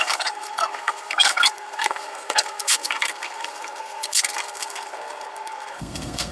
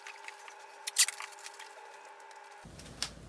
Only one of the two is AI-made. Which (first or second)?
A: first